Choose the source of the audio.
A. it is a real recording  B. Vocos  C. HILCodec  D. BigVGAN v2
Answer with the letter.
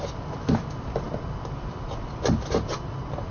A